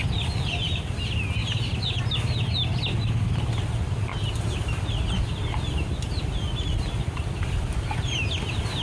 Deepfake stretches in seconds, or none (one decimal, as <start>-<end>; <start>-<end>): none